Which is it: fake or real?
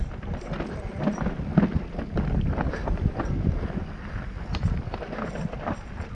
real